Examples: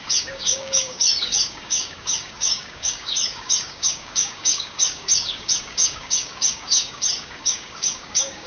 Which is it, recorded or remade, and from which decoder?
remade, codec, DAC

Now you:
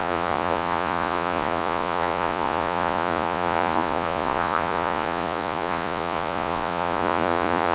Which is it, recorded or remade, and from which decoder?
remade, vocoder, Vocos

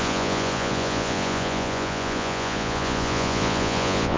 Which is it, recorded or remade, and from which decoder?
remade, vocoder, Vocos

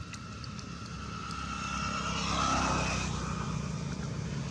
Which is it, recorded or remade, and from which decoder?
recorded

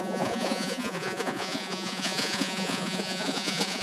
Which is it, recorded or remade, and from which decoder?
remade, vocoder, Vocos